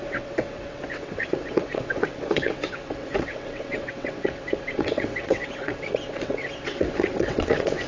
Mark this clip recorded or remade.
remade